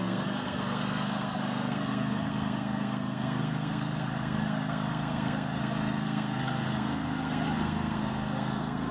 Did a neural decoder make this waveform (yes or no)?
yes